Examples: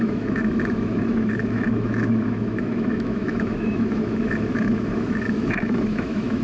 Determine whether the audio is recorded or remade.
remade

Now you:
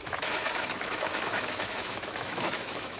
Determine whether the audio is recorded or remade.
remade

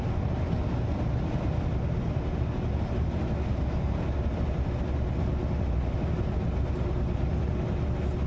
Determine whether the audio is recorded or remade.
recorded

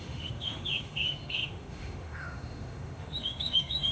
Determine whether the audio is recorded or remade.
remade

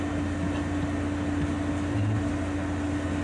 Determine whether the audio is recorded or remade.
recorded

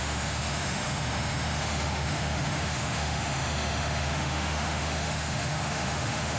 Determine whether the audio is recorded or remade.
remade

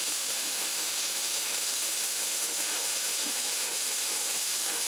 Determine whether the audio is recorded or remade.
remade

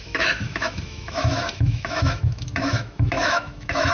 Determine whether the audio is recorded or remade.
remade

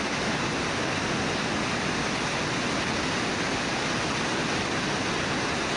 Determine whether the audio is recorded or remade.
recorded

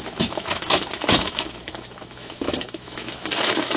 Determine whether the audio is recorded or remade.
remade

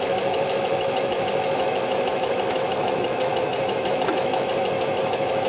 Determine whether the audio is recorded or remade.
remade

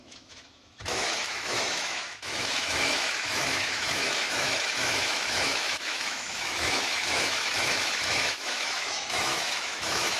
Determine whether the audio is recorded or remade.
remade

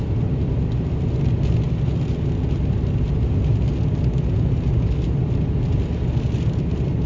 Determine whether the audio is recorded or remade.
recorded